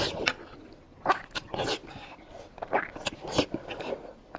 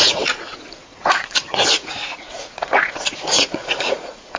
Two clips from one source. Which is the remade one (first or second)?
second